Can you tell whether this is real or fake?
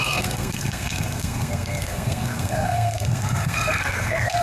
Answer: fake